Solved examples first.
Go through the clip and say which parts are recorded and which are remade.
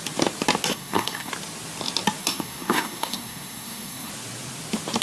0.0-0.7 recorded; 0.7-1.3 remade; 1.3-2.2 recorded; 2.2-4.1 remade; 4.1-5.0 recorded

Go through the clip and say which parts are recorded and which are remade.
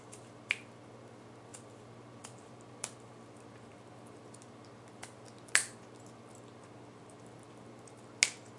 0.0-8.6 recorded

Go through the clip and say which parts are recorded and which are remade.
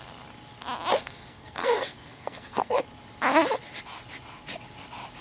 0.0-0.9 recorded; 0.9-2.8 remade; 2.8-5.2 recorded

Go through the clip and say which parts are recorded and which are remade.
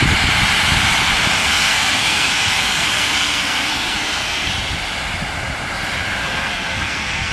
0.0-1.4 recorded; 1.4-4.5 remade; 4.5-6.2 recorded; 6.2-7.3 remade